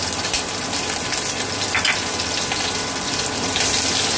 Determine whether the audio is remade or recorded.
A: recorded